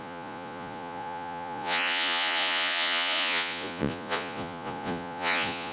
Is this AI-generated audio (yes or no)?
yes